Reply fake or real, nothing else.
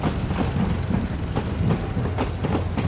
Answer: real